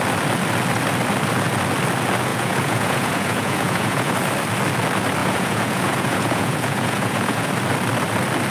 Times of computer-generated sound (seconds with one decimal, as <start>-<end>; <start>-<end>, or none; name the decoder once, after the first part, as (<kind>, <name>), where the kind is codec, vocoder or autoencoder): 2.3-4.1 (vocoder, Vocos); 5.2-7.5